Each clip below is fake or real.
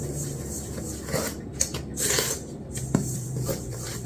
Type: fake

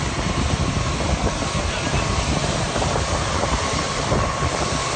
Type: fake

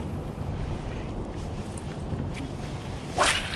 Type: fake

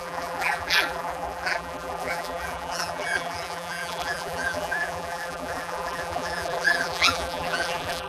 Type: fake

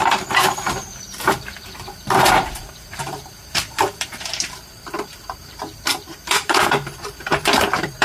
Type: fake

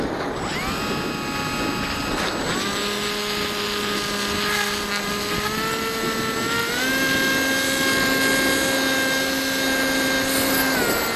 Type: real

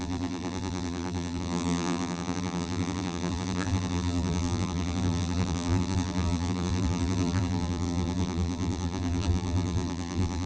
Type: fake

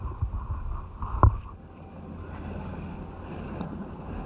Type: real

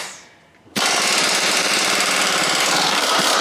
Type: fake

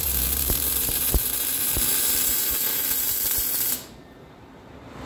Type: fake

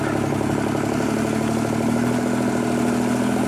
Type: real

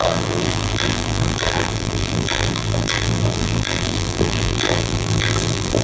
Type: fake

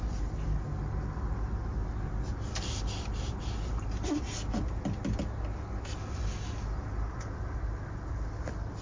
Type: real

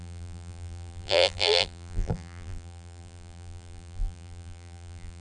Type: fake